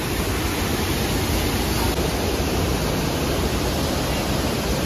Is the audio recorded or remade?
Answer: recorded